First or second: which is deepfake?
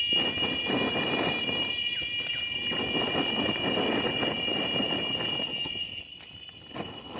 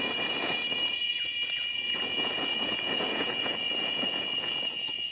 second